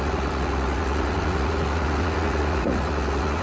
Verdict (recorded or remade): remade